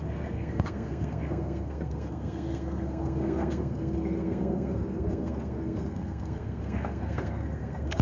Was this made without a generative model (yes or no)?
no